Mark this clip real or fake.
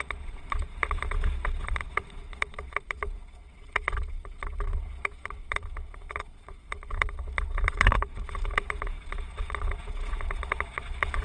fake